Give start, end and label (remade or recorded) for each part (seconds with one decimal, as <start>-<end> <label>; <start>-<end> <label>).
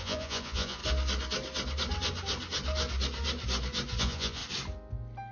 0.0-0.8 remade; 0.8-4.0 recorded; 4.0-4.4 remade; 4.4-5.3 recorded